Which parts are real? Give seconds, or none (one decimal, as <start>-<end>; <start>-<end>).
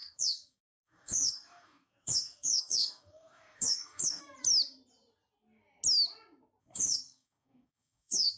4.2-6.6